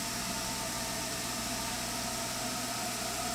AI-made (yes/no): no